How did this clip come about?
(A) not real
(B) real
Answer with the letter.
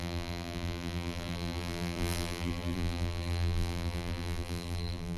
A